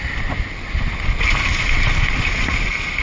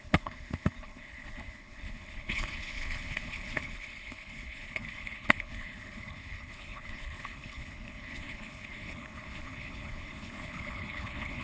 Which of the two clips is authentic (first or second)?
first